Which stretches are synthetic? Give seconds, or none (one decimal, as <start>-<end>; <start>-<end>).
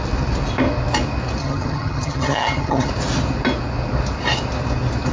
1.4-2.9